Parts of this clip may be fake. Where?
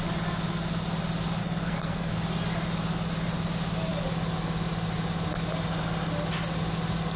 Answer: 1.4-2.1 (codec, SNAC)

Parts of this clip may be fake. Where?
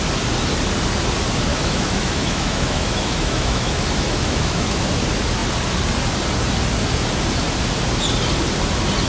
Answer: 1.5-4.8 (autoencoder, DAC-VAE)